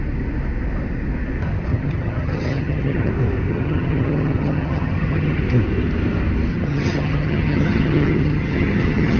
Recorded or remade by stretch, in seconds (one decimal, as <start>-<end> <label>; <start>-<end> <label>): 0.0-1.7 recorded; 1.7-3.1 remade; 3.1-3.5 recorded; 3.5-5.4 remade; 5.4-6.5 recorded; 6.5-9.2 remade